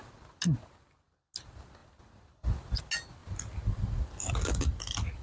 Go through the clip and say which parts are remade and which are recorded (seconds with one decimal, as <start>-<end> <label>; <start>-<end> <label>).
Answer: 0.0-5.2 recorded